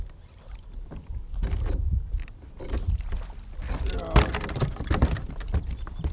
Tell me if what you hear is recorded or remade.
recorded